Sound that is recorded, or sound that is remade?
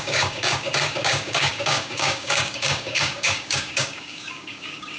remade